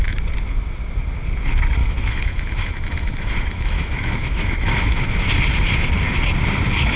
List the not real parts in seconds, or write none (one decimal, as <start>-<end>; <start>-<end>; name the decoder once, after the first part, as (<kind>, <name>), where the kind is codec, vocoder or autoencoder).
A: 1.8-5.3 (autoencoder, DAC-VAE)